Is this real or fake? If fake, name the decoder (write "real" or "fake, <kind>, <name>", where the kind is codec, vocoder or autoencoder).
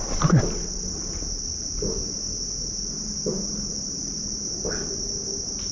real